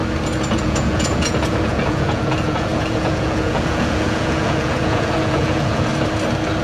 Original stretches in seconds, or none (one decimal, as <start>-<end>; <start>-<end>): 0.0-0.6; 5.9-6.6